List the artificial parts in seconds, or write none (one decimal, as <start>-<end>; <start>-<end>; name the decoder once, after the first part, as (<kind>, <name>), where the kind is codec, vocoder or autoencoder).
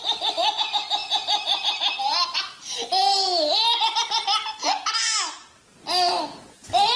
none